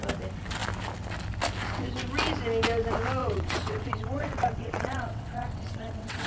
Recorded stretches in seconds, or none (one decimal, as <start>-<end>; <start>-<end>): 0.0-3.2